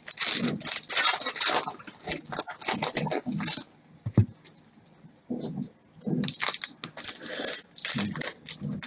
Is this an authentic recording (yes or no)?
yes